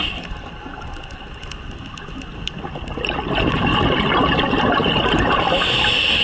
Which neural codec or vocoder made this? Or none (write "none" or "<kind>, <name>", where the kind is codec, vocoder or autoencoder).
none